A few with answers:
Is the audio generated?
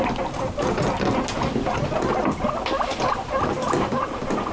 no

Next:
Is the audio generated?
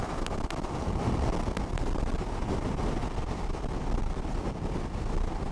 no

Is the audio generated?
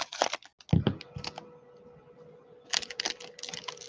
no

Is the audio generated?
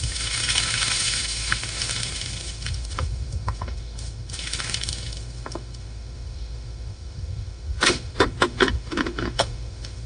yes